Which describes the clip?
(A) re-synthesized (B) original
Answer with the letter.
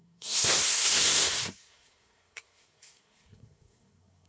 A